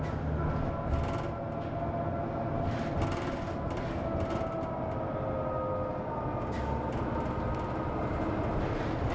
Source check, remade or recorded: recorded